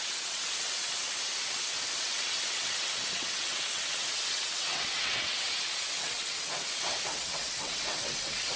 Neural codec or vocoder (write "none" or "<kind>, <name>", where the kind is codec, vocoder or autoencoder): vocoder, WaveNeXt